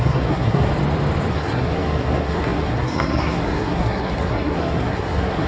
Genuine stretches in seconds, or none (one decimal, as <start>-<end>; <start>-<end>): 0.7-1.3